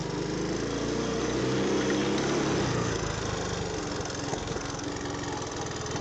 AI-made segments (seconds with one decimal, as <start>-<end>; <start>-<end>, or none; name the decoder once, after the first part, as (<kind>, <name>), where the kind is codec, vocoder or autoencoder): 2.7-3.2 (codec, SNAC); 4.3-4.9